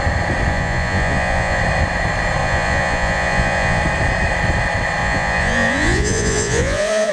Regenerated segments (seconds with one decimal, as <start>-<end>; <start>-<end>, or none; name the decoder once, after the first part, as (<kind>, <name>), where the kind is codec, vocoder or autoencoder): 0.5-1.6 (vocoder, Vocos); 2.4-3.8; 5.0-7.1